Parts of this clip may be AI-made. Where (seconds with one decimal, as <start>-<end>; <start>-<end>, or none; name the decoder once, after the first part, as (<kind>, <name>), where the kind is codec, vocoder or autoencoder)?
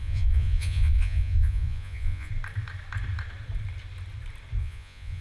0.0-2.3 (vocoder, Vocos); 4.6-5.2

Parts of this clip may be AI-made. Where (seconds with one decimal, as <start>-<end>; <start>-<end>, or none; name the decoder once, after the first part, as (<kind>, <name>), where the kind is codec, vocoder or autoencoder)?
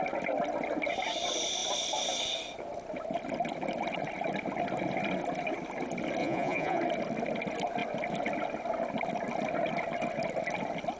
6.2-6.8 (vocoder, Vocos)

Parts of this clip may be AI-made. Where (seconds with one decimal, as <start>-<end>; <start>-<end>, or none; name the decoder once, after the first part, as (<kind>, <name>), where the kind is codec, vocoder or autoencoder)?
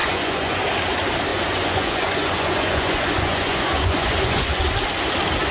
0.0-0.6 (vocoder, Vocos); 1.3-4.6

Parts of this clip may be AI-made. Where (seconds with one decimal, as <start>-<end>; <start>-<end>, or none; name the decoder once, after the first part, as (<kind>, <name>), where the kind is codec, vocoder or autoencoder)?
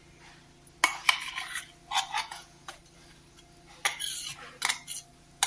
2.3-2.8 (vocoder, Vocos)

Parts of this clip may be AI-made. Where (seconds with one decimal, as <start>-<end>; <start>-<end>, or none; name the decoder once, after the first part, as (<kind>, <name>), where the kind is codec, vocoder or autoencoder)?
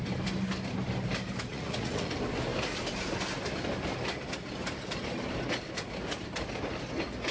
1.5-2.1 (vocoder, Vocos)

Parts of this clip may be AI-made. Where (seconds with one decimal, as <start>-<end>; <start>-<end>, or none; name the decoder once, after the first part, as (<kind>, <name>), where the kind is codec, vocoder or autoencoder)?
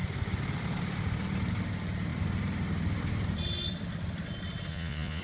4.7-5.2 (vocoder, Vocos)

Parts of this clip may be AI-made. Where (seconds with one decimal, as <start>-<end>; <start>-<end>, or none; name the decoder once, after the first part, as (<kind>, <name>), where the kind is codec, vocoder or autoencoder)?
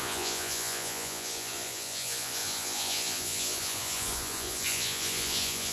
0.0-5.7 (vocoder, Vocos)